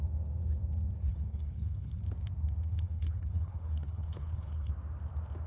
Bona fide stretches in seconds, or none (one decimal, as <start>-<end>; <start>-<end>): 0.0-1.1; 2.0-2.7; 4.7-5.5